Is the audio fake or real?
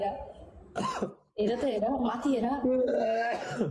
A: fake